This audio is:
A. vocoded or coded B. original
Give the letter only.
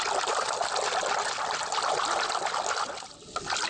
B